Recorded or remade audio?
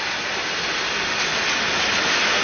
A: recorded